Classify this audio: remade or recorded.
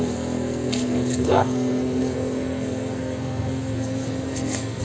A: remade